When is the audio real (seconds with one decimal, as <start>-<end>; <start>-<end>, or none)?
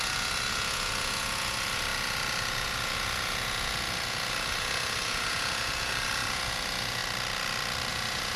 7.0-7.9